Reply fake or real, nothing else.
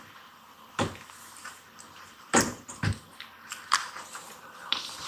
fake